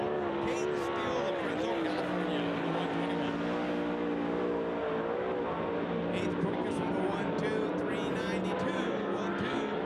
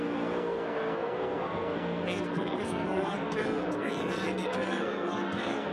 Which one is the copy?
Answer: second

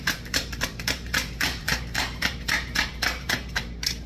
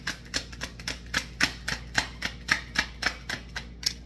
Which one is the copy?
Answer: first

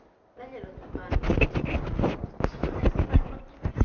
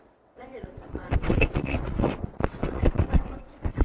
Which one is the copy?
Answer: second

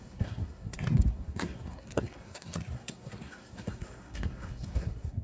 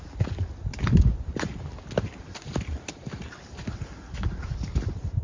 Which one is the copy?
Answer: first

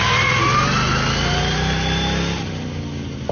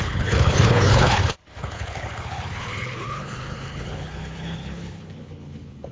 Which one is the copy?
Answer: second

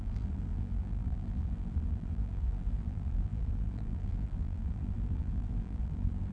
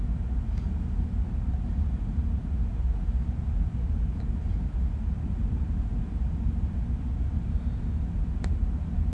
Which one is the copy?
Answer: first